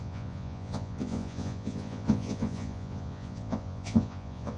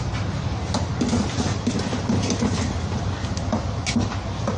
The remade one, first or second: first